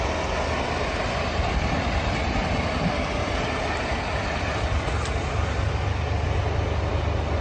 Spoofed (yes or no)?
no